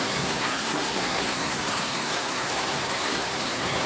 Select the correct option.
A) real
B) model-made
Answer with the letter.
B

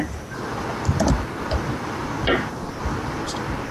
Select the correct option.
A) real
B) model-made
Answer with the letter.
A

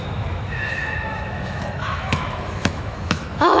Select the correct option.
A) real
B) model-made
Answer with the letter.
B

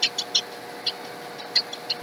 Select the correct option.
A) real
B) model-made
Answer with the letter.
A